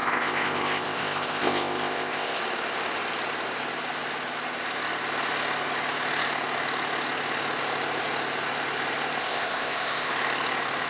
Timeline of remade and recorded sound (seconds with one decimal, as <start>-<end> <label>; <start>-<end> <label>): 0.0-2.4 remade; 2.4-9.2 recorded; 9.2-10.1 remade; 10.1-10.9 recorded